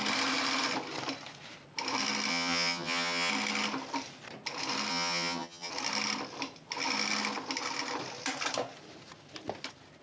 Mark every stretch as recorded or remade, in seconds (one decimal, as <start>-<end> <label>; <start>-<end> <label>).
0.0-2.3 recorded; 2.3-3.3 remade; 3.3-4.9 recorded; 4.9-5.7 remade; 5.7-10.0 recorded